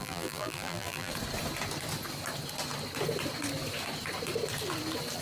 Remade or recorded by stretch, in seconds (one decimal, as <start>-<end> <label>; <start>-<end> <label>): 0.0-1.1 remade; 1.1-5.2 recorded